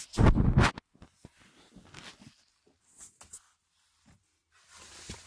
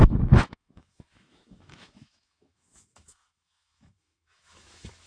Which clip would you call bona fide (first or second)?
first